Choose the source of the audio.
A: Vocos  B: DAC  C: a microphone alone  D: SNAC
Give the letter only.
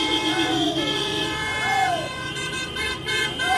A